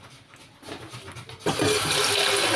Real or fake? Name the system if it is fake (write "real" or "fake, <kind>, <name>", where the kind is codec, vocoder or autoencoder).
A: real